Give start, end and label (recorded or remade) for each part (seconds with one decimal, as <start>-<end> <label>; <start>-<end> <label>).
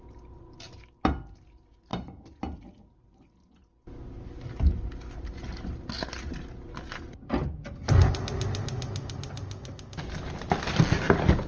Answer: 0.0-1.9 recorded; 1.9-3.3 remade; 3.3-11.5 recorded